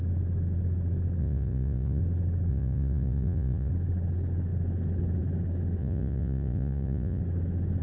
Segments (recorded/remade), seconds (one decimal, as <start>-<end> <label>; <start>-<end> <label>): 0.0-1.2 recorded; 1.2-2.0 remade; 2.0-2.5 recorded; 2.5-3.7 remade; 3.7-5.8 recorded; 5.8-7.2 remade; 7.2-7.8 recorded